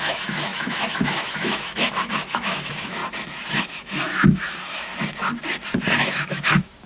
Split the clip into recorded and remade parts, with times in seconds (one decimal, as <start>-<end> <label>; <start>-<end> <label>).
0.0-3.0 remade; 3.0-3.6 recorded; 3.6-4.9 remade; 4.9-6.0 recorded; 6.0-6.9 remade